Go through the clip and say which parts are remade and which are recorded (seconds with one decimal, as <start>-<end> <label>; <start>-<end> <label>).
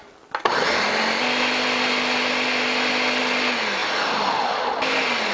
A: 0.0-5.3 recorded